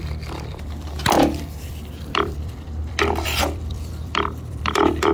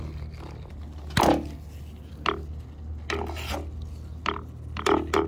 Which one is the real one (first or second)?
second